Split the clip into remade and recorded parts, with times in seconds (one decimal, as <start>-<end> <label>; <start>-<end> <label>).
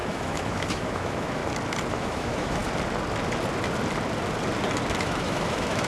0.0-1.4 remade; 1.4-1.9 recorded; 1.9-2.6 remade; 2.6-5.0 recorded; 5.0-5.9 remade